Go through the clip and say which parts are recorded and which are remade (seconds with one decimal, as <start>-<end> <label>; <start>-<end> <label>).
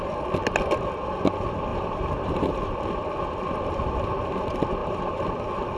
0.0-1.7 recorded; 1.7-2.5 remade; 2.5-4.8 recorded; 4.8-5.3 remade; 5.3-5.8 recorded